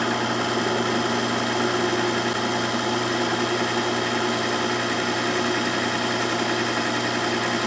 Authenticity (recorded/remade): recorded